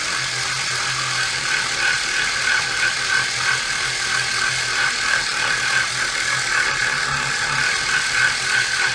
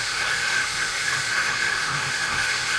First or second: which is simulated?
second